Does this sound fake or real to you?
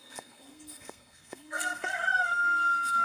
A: fake